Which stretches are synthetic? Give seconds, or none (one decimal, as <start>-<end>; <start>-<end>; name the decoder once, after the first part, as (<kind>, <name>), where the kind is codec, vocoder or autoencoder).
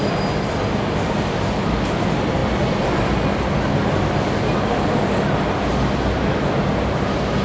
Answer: none